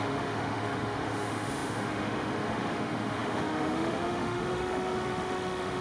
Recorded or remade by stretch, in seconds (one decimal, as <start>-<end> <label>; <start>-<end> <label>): 0.0-5.8 remade